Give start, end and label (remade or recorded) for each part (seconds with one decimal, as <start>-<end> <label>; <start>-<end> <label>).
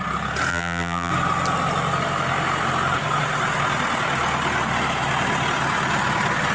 0.0-0.5 recorded; 0.5-1.1 remade; 1.1-6.5 recorded